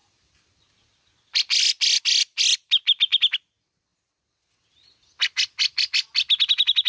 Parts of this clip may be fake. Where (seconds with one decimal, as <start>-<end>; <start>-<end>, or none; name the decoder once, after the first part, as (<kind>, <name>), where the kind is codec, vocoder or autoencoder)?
none